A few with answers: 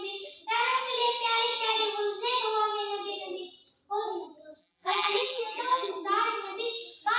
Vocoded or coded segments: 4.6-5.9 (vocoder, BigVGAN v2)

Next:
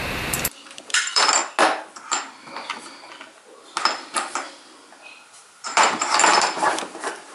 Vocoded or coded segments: 0.0-1.4 (vocoder, BigVGAN v2); 5.2-7.3

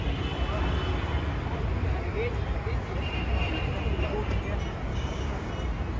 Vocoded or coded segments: 4.9-5.5 (codec, DAC)

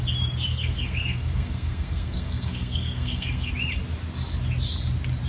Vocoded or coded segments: 0.5-3.5 (codec, SNAC)

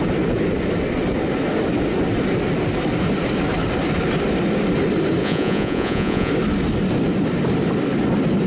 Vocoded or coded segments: 5.2-6.3 (vocoder, Vocos)

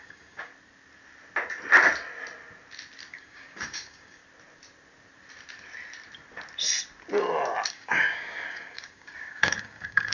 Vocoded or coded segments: 0.0-0.5 (codec, DAC); 3.1-4.2; 7.7-10.1

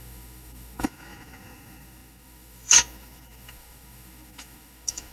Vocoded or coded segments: 0.0-5.1 (autoencoder, DAC-VAE)